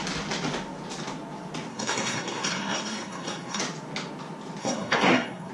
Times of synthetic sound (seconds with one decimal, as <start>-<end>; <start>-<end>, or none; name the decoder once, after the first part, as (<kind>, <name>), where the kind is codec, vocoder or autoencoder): 1.7-3.6 (codec, SNAC); 4.6-5.5